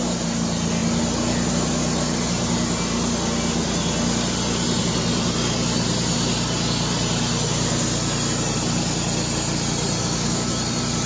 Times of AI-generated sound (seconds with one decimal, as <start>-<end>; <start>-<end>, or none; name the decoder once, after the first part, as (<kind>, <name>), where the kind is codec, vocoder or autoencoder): 10.0-10.5 (codec, DAC)